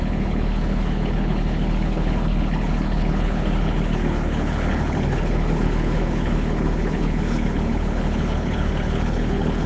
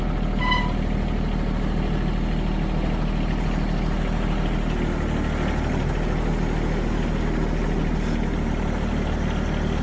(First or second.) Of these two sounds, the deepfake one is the first